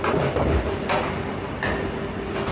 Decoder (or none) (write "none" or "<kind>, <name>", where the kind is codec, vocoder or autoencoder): none